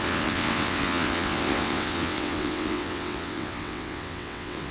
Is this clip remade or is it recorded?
remade